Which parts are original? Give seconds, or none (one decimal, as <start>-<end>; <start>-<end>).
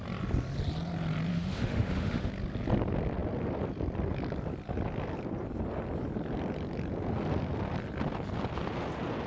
0.0-1.3; 2.3-9.3